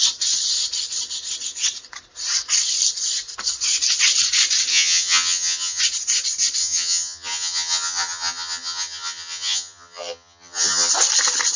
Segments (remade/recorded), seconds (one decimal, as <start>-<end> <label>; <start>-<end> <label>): 0.0-4.7 recorded; 4.7-5.8 remade; 5.8-6.6 recorded; 6.6-10.9 remade; 10.9-11.6 recorded